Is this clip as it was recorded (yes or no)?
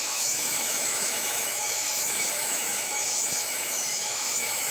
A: no